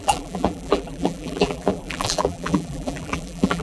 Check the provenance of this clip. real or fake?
fake